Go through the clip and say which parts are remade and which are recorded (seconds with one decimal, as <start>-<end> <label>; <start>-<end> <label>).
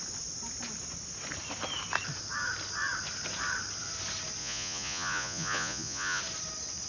0.0-4.4 recorded; 4.4-6.2 remade; 6.2-6.9 recorded